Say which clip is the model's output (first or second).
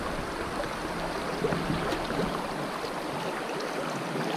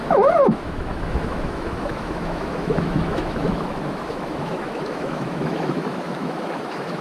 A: second